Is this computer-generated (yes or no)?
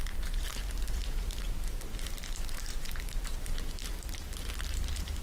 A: yes